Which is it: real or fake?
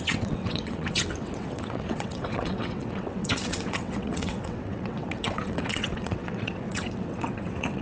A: fake